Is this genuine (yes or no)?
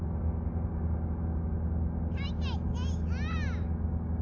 yes